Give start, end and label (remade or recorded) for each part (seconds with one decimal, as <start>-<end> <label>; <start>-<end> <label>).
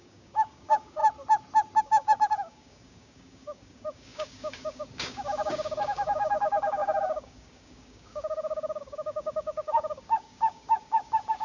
0.0-1.0 remade; 1.0-1.8 recorded; 1.8-11.4 remade